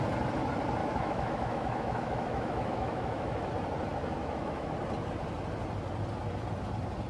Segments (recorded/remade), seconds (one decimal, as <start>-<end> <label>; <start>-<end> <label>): 0.0-0.8 recorded; 0.8-3.5 remade; 3.5-4.2 recorded; 4.2-4.7 remade; 4.7-7.1 recorded